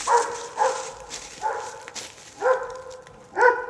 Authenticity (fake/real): real